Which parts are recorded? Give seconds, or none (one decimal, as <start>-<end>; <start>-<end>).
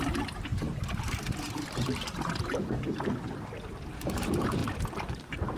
0.0-5.6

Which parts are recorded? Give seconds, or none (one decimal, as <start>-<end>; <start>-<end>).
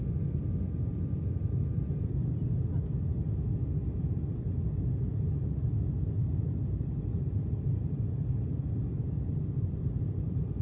0.0-10.6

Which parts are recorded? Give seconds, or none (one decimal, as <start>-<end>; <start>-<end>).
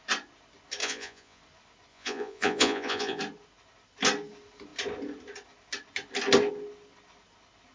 0.0-0.8; 1.4-1.9; 3.2-7.7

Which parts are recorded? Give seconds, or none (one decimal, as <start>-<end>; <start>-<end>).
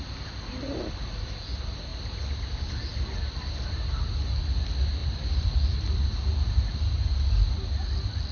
0.0-8.3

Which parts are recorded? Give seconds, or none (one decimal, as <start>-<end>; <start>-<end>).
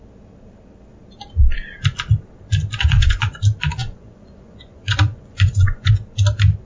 0.0-2.8; 3.4-3.8; 5.9-6.7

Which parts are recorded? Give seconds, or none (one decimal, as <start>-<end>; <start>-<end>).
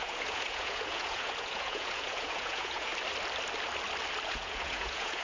2.9-4.3